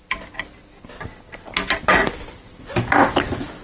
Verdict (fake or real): real